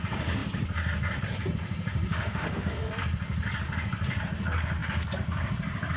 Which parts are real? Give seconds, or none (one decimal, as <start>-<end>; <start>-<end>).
0.0-2.1; 2.9-6.0